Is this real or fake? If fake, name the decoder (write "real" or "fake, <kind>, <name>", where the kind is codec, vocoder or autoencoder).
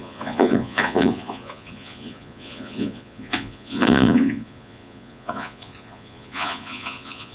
fake, vocoder, Vocos